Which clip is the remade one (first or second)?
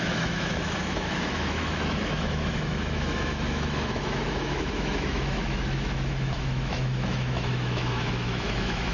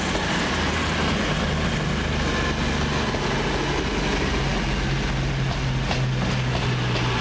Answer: first